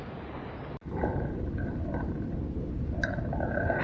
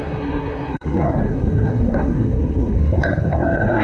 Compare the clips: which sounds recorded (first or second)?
first